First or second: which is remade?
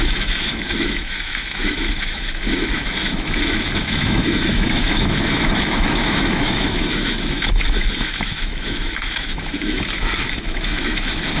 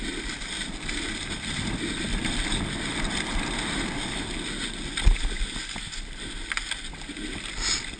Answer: first